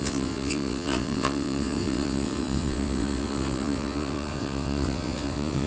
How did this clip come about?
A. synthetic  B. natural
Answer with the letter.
A